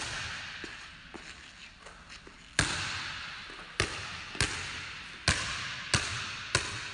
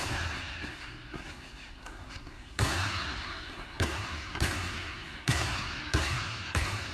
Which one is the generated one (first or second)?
second